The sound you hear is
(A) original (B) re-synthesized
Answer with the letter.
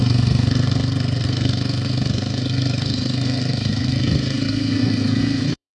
B